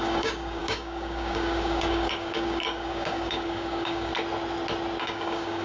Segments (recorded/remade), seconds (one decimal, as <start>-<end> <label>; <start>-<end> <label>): 0.0-4.1 remade; 4.1-5.0 recorded; 5.0-5.6 remade